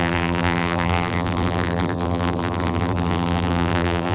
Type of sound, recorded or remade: remade